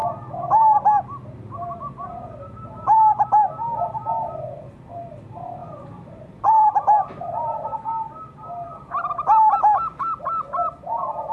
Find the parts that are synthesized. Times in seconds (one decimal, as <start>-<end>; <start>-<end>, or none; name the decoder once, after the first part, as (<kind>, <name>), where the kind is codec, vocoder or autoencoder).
5.6-7.7 (vocoder, BigVGAN v2)